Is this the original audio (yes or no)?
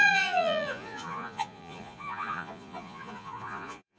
no